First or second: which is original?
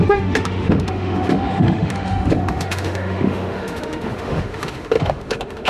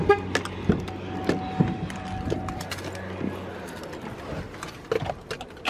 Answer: second